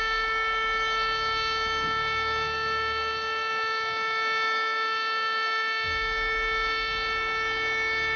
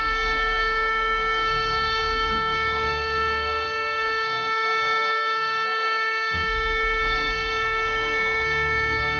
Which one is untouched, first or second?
first